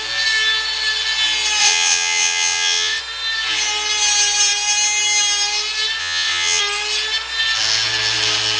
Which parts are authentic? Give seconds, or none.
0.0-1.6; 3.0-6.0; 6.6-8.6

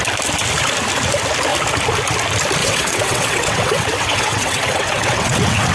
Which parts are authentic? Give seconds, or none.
0.0-2.6

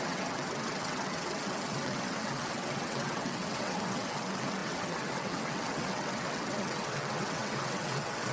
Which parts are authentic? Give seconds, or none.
none

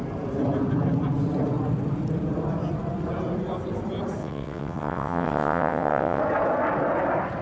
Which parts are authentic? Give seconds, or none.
0.0-4.2; 6.2-7.4

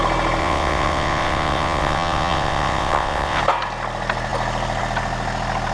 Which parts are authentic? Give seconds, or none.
0.0-0.4; 3.4-5.7

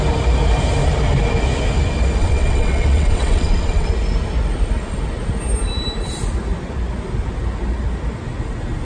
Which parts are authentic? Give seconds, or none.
0.0-2.2; 3.9-8.8